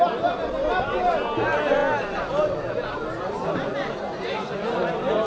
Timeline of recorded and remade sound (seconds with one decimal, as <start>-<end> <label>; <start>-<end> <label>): 0.0-5.3 recorded